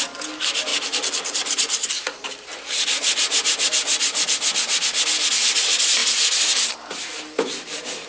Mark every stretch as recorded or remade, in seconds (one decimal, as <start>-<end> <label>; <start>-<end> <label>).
0.0-0.7 recorded; 0.7-2.5 remade; 2.5-8.1 recorded